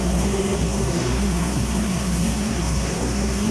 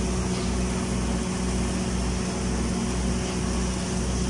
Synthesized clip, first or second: first